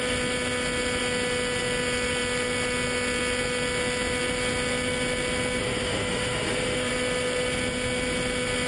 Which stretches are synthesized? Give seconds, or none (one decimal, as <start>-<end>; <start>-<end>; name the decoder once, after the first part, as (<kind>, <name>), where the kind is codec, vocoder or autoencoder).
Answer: 5.6-6.9 (autoencoder, DAC-VAE)